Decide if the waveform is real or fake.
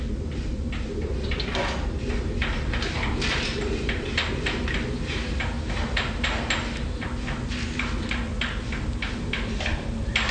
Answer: real